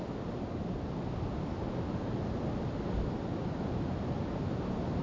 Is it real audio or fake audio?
real